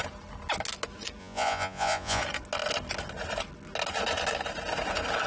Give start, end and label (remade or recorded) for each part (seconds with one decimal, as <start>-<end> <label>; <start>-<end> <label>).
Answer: 0.0-1.2 recorded; 1.2-2.2 remade; 2.2-5.3 recorded